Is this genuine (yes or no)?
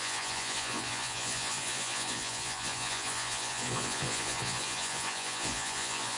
no